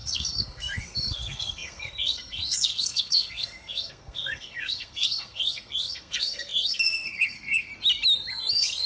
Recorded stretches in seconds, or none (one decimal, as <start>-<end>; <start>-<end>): 7.7-8.3